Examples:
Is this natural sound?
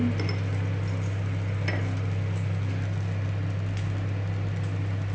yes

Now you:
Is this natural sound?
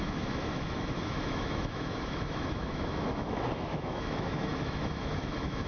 no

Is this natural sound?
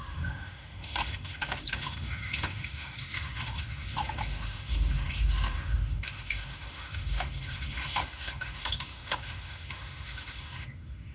no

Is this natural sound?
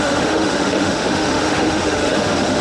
no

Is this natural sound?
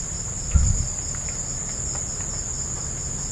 yes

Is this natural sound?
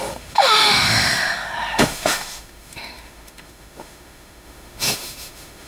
no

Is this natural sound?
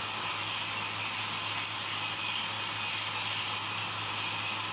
yes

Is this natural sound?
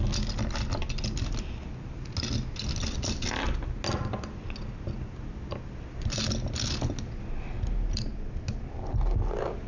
yes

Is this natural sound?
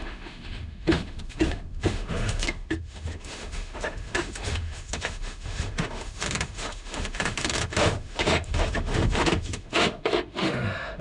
no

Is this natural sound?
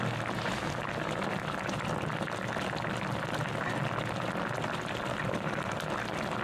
yes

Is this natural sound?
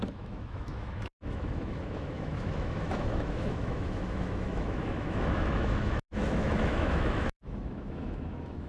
no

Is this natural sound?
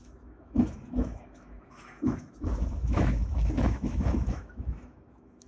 no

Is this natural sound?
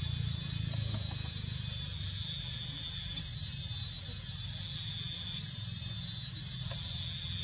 yes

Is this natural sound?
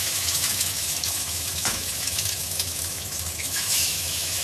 no